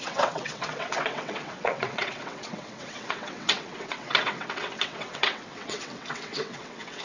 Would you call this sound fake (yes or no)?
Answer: yes